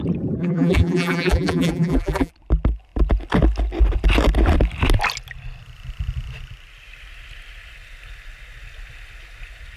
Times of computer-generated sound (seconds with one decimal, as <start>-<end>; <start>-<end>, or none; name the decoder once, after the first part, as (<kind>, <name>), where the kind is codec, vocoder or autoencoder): 0.4-2.3 (vocoder, BigVGAN v2)